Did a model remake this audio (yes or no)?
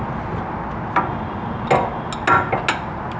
no